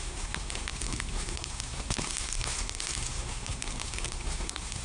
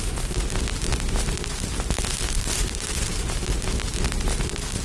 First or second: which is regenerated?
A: first